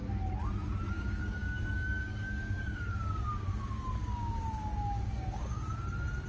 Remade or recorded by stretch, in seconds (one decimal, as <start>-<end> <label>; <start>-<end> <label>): 0.0-0.9 recorded; 0.9-5.6 remade; 5.6-6.3 recorded